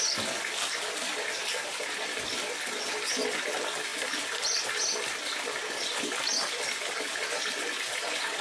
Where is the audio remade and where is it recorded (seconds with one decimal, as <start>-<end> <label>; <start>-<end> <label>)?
0.0-8.4 recorded